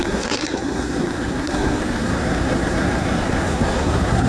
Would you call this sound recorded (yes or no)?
no